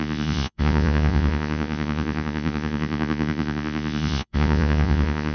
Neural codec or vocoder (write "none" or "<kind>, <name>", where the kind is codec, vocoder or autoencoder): vocoder, Vocos